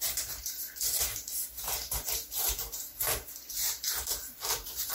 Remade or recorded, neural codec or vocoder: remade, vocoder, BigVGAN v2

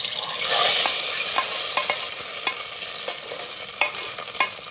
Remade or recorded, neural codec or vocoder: recorded